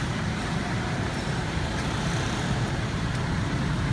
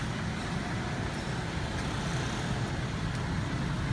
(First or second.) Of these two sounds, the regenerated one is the first